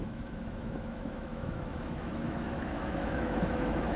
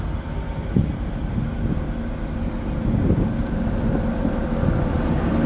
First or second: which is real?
second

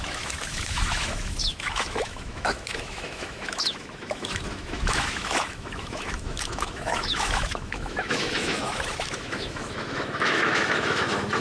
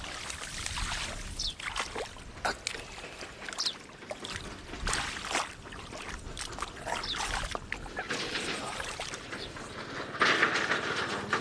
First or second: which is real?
second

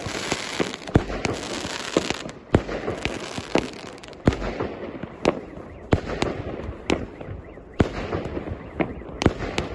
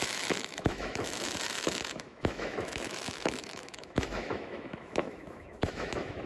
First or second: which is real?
first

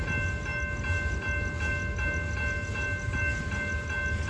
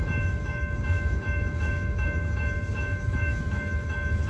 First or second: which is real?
first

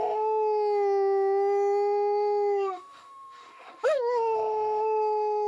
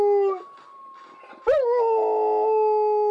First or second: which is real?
second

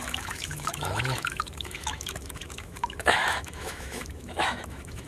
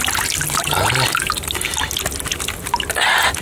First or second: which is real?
second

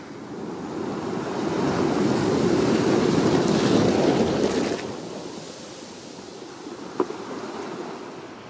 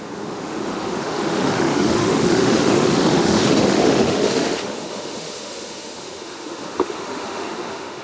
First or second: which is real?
first